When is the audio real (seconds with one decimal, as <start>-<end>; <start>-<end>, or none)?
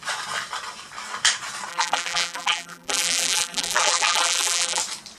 0.0-1.7; 4.8-5.2